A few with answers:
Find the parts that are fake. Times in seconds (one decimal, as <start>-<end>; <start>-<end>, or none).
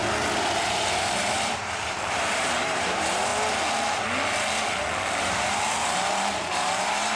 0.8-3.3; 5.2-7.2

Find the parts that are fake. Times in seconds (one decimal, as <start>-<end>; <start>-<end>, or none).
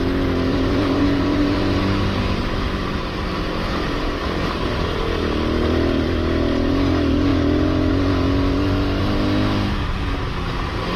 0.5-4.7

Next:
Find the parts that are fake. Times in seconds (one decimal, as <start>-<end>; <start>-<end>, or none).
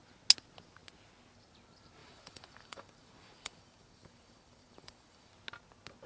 2.0-5.3